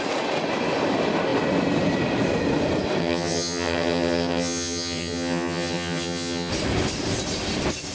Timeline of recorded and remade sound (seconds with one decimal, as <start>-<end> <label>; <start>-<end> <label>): 0.0-3.0 recorded; 3.0-6.5 remade; 6.5-7.9 recorded